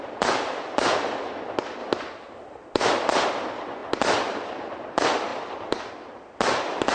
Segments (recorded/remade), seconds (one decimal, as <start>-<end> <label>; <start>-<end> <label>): 0.0-6.9 recorded